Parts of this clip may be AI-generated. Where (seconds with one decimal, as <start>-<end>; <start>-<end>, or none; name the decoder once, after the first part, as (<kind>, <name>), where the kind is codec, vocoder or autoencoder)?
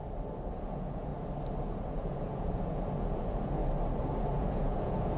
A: 0.6-1.1 (vocoder, Vocos); 1.7-3.6; 4.2-5.2